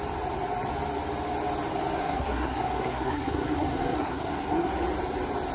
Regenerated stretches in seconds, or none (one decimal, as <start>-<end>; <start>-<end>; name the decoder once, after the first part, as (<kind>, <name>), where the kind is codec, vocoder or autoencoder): 2.0-4.7 (codec, SNAC)